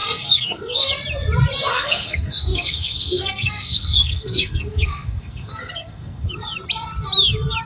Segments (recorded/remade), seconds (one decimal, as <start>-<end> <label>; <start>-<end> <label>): 0.0-0.9 remade; 0.9-1.7 recorded; 1.7-6.3 remade; 6.3-7.7 recorded